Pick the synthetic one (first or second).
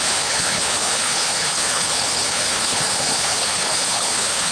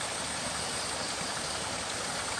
first